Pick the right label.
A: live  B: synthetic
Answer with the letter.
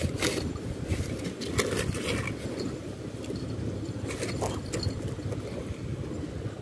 A